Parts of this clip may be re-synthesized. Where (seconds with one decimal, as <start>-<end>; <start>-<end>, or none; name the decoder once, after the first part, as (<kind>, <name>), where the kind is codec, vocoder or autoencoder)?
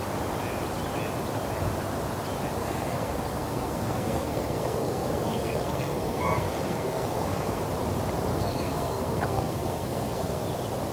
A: 2.6-7.6 (codec, SNAC); 8.3-10.4